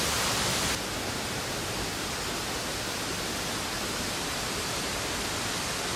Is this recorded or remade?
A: recorded